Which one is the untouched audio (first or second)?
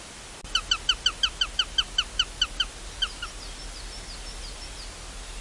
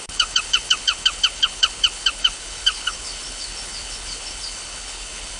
first